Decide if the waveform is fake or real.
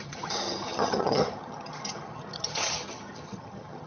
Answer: fake